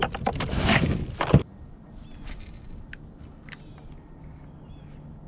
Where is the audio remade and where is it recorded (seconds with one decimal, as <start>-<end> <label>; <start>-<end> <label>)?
0.0-5.3 recorded